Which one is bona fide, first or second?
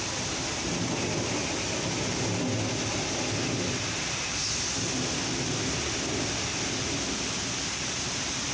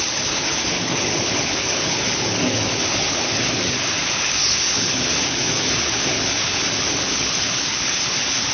first